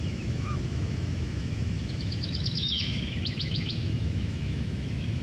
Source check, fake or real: fake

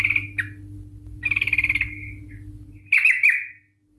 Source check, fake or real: real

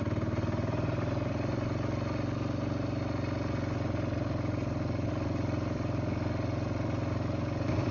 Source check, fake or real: real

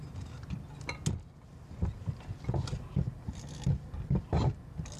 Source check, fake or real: real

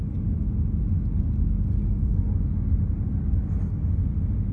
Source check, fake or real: real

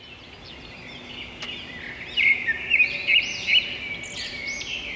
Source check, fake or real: real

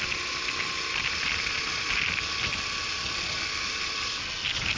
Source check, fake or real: real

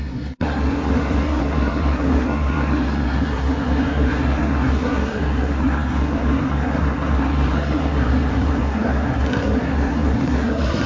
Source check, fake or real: fake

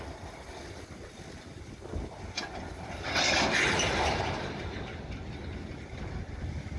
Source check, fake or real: real